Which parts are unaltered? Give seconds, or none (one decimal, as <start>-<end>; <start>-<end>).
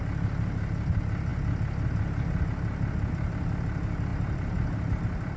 0.0-4.1; 5.0-5.4